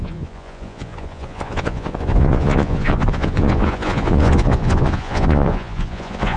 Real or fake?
fake